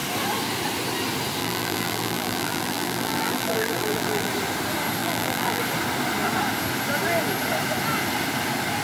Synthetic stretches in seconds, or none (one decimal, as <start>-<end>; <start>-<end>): 1.4-4.3; 5.0-5.6